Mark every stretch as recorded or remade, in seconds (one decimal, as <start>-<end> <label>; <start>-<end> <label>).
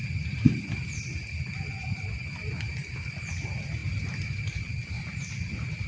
0.0-5.9 recorded